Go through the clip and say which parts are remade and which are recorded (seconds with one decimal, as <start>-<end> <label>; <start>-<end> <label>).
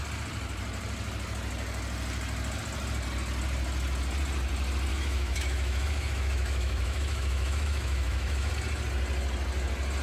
0.0-4.9 recorded; 4.9-8.5 remade; 8.5-10.0 recorded